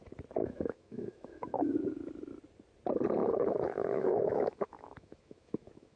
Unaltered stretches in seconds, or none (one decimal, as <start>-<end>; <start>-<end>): 0.0-0.4; 1.7-3.2